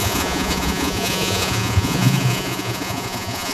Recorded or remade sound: remade